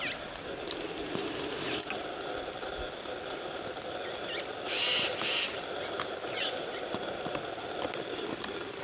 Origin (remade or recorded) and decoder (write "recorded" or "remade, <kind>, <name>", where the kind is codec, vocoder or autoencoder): recorded